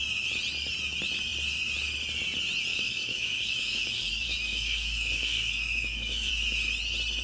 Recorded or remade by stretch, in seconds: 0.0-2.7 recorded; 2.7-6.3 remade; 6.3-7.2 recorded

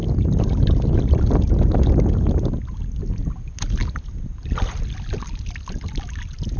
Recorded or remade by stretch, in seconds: 0.0-6.6 recorded

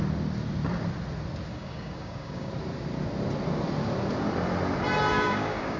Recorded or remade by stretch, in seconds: 0.0-1.5 recorded; 1.5-2.5 remade; 2.5-5.1 recorded; 5.1-5.8 remade

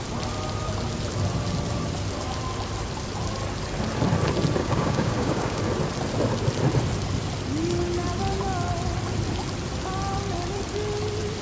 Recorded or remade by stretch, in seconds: 0.0-4.6 recorded; 4.6-5.6 remade; 5.6-11.4 recorded

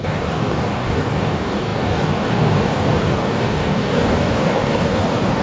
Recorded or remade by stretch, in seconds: 0.0-5.4 remade

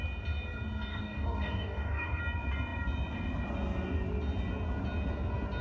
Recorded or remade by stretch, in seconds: 0.0-0.9 recorded; 0.9-2.2 remade; 2.2-5.6 recorded